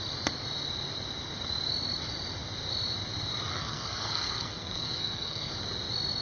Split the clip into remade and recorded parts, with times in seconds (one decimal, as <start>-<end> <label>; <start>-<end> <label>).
0.0-3.5 recorded; 3.5-5.5 remade; 5.5-6.2 recorded